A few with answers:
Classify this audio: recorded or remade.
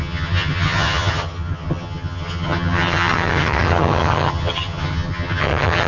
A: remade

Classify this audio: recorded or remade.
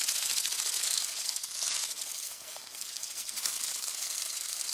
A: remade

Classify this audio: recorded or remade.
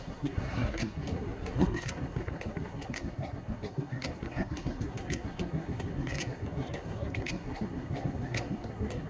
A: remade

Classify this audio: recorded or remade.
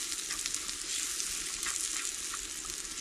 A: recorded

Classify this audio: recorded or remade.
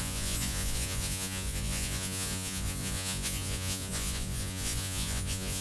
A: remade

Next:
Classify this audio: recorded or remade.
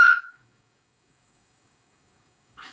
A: remade